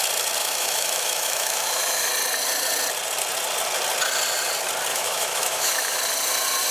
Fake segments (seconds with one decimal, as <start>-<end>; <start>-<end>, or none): 0.4-2.1; 4.9-6.0